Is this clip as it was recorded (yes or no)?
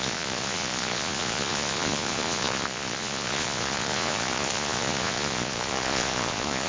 no